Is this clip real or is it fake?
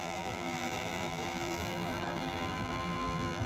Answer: fake